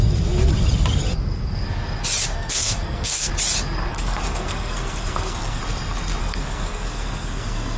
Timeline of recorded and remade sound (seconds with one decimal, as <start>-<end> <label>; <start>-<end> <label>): 0.0-2.3 recorded; 2.3-3.3 remade; 3.3-3.9 recorded; 3.9-5.6 remade; 5.6-6.2 recorded; 6.2-7.8 remade